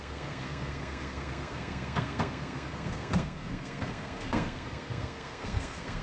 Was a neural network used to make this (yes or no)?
yes